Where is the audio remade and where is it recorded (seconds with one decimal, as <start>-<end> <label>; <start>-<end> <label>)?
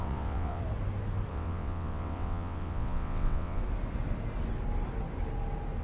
0.0-0.6 remade; 0.6-1.3 recorded; 1.3-3.6 remade; 3.6-5.8 recorded